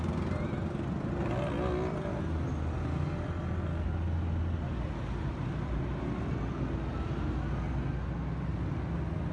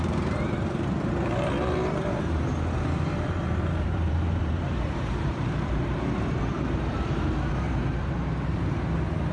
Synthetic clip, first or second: second